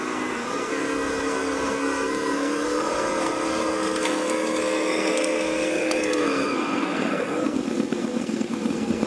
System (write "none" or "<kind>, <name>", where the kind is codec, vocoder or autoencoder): codec, SNAC